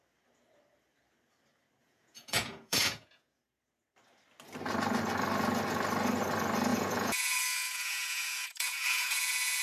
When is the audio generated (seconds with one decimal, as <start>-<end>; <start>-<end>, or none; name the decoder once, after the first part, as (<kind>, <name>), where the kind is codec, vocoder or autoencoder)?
1.8-3.4 (vocoder, Vocos); 6.7-9.6